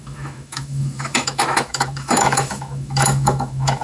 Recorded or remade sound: remade